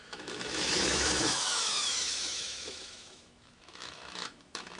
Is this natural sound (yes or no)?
no